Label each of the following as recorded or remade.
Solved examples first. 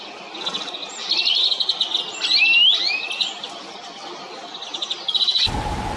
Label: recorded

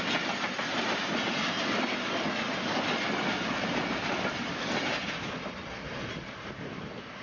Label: recorded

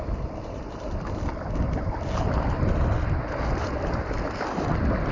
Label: recorded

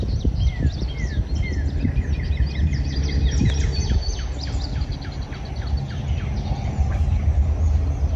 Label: recorded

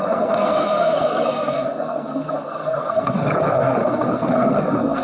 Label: remade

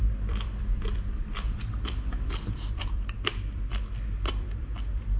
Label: remade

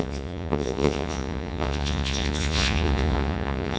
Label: remade